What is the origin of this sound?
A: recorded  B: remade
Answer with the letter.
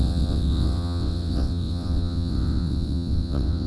B